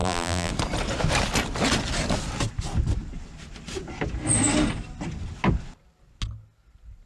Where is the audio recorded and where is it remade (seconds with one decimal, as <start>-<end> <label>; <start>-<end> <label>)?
0.0-0.5 remade; 0.5-7.1 recorded